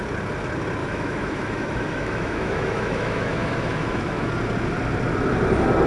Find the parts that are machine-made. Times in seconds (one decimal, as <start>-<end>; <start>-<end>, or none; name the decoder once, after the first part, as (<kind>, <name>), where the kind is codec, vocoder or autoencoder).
0.8-4.3 (autoencoder, DAC-VAE)